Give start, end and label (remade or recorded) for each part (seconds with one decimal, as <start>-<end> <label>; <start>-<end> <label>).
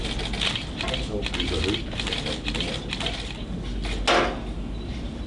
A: 0.0-5.3 recorded